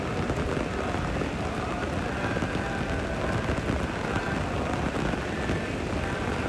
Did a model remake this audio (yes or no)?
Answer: no